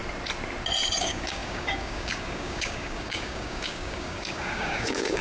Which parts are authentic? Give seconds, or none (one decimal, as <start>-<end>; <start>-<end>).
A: 0.0-1.0